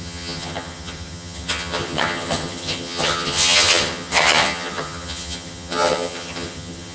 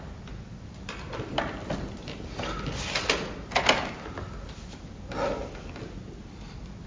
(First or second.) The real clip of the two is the second